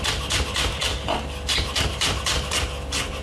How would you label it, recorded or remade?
recorded